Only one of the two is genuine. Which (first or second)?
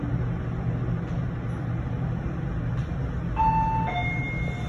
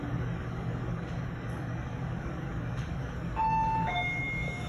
first